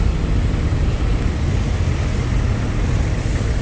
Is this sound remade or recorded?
recorded